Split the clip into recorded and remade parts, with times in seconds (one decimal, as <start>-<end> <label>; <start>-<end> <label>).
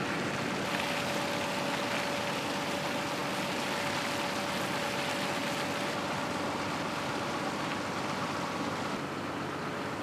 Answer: 0.0-10.0 recorded